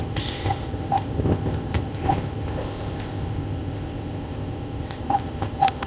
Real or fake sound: fake